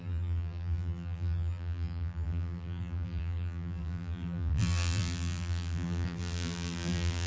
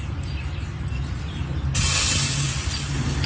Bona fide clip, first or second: second